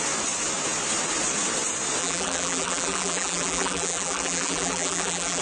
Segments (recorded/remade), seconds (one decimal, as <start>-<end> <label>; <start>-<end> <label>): 0.0-2.0 recorded; 2.0-5.4 remade